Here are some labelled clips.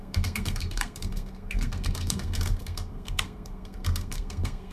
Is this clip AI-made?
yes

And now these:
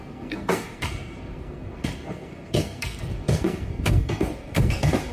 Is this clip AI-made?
yes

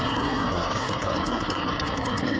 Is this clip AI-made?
yes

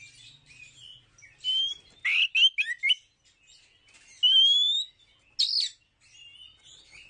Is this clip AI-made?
no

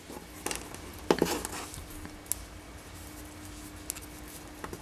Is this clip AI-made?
no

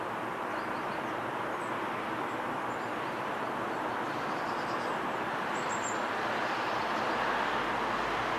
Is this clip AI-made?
no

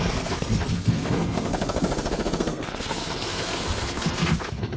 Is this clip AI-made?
yes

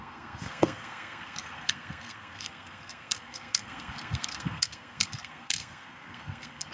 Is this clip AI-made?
yes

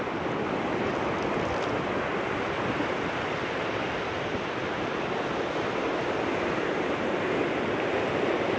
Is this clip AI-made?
no